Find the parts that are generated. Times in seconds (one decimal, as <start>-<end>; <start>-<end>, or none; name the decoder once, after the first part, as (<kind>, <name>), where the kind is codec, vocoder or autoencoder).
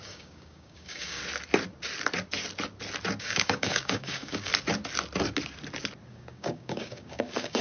0.0-1.2 (codec, DAC); 3.2-4.5; 6.1-7.6